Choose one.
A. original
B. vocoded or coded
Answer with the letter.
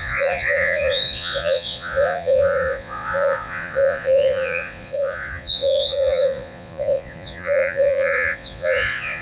B